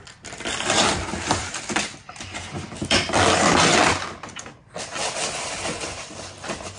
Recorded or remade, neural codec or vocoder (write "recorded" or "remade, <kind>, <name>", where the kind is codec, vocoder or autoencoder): remade, vocoder, BigVGAN v2